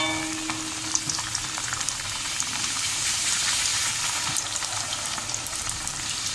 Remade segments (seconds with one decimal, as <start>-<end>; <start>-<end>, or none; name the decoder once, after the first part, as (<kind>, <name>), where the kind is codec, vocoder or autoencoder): 1.7-3.3 (vocoder, BigVGAN v2); 3.7-6.3